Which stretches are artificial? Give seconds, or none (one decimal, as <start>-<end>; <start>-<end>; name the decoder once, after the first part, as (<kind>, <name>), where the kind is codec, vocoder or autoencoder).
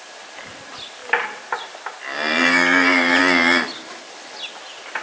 1.0-1.9 (vocoder, BigVGAN v2); 2.4-3.2